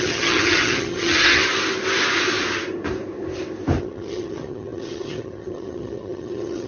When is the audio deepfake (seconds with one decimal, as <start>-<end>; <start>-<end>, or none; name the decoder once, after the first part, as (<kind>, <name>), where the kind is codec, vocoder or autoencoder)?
0.0-1.4 (vocoder, HiFi-GAN); 3.8-6.7